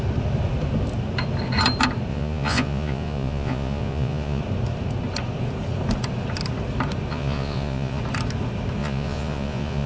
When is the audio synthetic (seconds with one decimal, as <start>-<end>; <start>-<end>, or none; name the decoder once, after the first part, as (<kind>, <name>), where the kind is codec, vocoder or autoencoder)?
2.1-4.4 (vocoder, Vocos); 7.1-8.0; 8.8-9.9